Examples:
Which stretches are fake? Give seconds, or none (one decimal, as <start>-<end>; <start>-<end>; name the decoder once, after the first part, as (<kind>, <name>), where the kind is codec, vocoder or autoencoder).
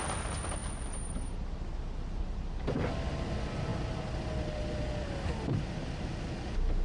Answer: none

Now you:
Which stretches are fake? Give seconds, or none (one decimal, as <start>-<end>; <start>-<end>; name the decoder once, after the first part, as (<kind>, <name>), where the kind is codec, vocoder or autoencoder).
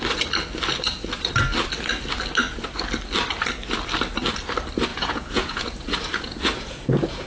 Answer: 4.9-7.3 (vocoder, Vocos)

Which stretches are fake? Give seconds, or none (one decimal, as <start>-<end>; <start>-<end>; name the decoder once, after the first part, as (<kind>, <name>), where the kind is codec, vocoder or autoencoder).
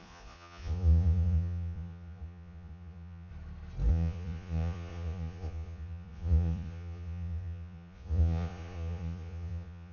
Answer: 0.0-3.3 (vocoder, Vocos); 3.9-9.9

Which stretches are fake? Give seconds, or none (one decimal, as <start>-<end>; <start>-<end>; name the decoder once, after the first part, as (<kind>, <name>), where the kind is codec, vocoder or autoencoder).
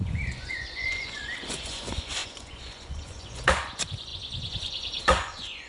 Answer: 0.0-5.7 (vocoder, Vocos)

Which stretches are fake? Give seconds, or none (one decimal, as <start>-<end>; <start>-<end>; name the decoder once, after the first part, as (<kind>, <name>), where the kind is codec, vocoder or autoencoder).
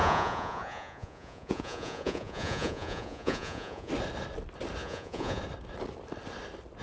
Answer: 0.0-3.9 (vocoder, Vocos); 4.8-5.4